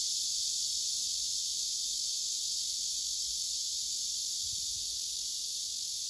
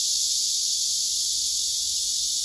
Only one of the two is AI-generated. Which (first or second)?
second